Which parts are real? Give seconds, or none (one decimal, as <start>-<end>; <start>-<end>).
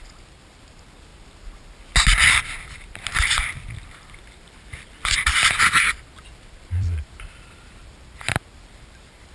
1.1-2.3